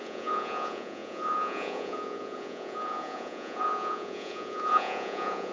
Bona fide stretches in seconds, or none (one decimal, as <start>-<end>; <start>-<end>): none